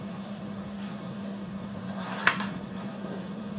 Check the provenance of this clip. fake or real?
fake